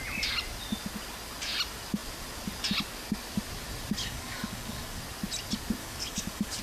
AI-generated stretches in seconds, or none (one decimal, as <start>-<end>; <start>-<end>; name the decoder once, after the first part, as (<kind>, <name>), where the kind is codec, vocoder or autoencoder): 4.0-5.0 (codec, DAC); 5.8-6.6